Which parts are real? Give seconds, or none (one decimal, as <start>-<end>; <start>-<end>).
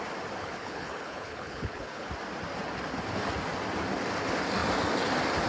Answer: 0.0-0.4; 2.1-5.5